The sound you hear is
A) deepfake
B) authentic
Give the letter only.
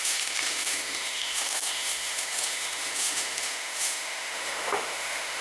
A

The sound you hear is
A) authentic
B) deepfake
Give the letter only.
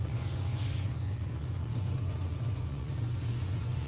B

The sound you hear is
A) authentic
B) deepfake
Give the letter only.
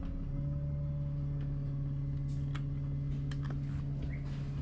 A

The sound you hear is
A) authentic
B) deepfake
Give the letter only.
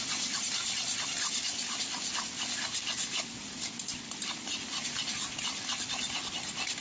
A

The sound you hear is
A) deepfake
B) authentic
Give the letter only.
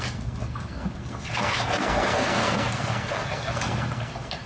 A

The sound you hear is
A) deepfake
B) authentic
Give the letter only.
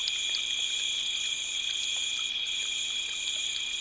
A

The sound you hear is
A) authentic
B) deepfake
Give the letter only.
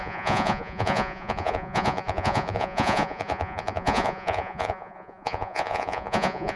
B